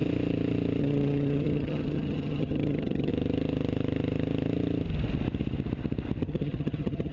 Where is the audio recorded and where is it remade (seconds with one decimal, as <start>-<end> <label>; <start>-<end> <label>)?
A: 0.0-0.8 recorded; 0.8-3.1 remade; 3.1-6.2 recorded; 6.2-7.1 remade